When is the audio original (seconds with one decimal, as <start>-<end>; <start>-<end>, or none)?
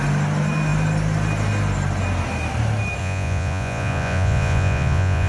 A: 0.0-3.0